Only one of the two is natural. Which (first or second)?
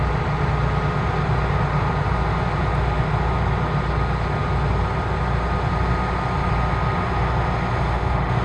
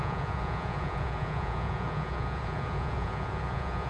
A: first